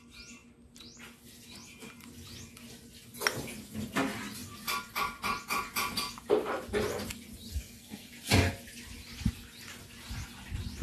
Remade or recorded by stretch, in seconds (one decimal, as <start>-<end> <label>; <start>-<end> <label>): 0.0-7.5 recorded; 7.5-8.1 remade; 8.1-10.8 recorded